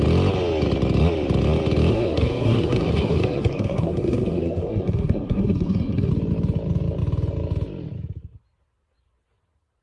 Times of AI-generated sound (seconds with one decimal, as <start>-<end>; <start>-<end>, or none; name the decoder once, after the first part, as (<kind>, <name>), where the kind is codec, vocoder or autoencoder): 1.9-6.1 (codec, SNAC)